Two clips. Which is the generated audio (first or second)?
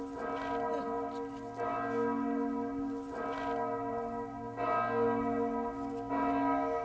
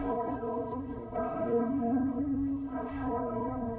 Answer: second